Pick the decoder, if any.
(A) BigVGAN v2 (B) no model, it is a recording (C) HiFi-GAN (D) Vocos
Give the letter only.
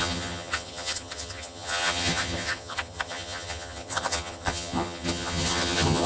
C